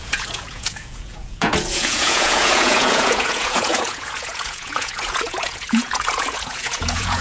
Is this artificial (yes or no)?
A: yes